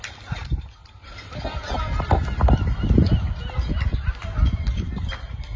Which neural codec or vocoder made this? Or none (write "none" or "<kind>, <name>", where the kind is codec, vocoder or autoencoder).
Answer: none